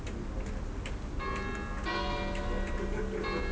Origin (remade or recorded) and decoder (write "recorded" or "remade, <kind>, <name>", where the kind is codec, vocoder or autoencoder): recorded